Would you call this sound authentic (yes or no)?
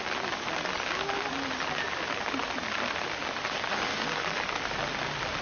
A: yes